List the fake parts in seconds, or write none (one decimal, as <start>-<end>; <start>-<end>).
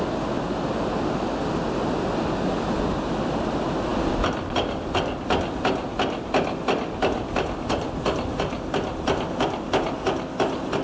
none